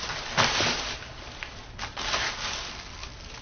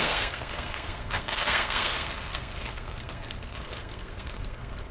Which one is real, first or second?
first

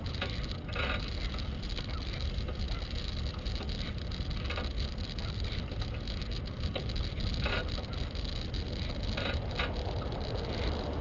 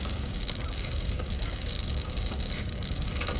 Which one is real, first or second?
first